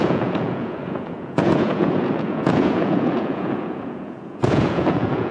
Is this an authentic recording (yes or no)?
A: no